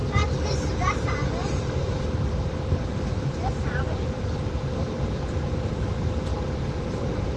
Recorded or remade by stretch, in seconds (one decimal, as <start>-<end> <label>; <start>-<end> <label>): 0.0-7.4 recorded